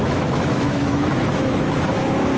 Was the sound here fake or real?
fake